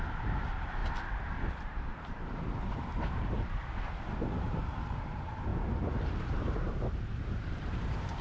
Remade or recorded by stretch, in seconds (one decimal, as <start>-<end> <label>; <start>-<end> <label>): 0.0-0.8 remade; 0.8-1.5 recorded; 1.5-5.5 remade; 5.5-6.2 recorded; 6.2-8.2 remade